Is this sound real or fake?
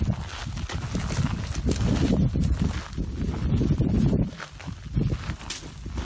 real